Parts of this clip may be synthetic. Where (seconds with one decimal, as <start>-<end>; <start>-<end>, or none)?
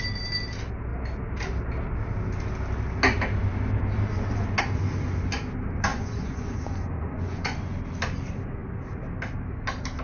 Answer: 5.9-7.7